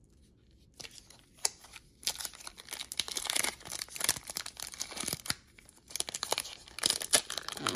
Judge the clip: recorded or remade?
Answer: recorded